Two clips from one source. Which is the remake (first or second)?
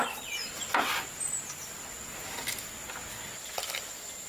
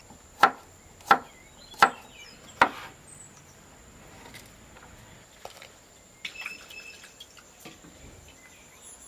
second